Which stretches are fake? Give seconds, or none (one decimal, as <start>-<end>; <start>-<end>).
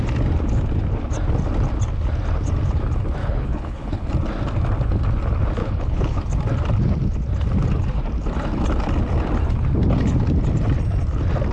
3.2-4.1; 5.6-6.2